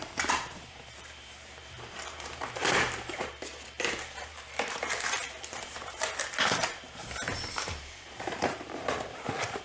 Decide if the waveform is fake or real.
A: fake